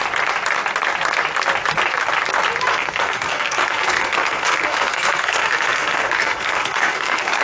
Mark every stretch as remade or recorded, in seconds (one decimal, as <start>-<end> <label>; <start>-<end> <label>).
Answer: 0.0-2.7 recorded; 2.7-7.4 remade